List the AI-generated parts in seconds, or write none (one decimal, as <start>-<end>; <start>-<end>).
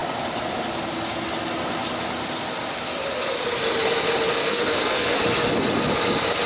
4.4-5.2